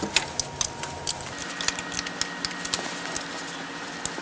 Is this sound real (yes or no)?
yes